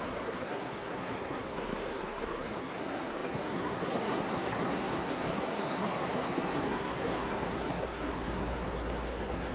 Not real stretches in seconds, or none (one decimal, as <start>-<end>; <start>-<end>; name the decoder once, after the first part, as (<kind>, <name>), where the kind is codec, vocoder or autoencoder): 0.0-9.5 (codec, SNAC)